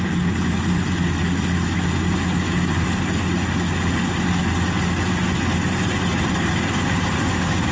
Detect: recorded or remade recorded